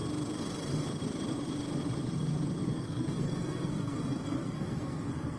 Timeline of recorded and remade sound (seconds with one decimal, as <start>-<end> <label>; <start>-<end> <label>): 0.0-2.6 recorded; 2.6-5.4 remade